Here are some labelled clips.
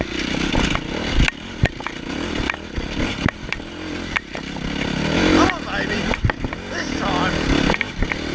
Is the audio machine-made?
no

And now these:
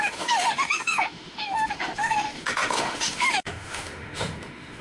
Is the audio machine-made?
yes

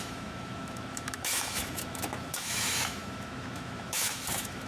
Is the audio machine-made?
yes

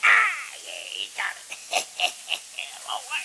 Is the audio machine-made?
no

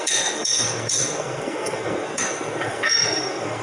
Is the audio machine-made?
yes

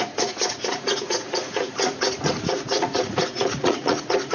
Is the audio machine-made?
yes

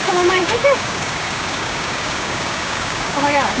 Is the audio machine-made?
yes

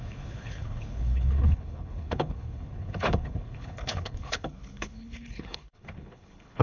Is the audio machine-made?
yes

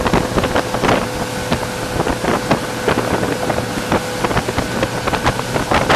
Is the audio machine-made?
no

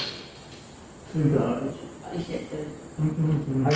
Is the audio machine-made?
no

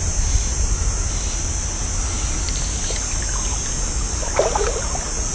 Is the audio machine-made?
no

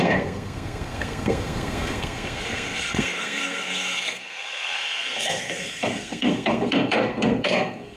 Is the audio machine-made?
yes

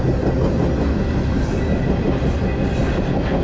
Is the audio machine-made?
no